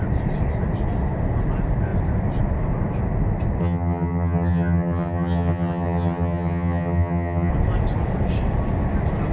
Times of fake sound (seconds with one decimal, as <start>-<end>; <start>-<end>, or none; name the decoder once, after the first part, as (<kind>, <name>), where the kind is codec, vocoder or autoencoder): 3.6-7.5 (vocoder, HiFi-GAN)